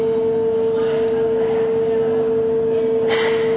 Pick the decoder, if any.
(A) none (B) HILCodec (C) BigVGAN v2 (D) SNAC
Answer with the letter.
A